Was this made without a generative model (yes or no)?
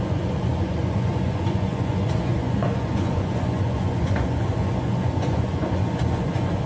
no